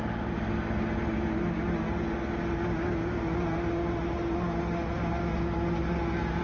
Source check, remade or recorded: recorded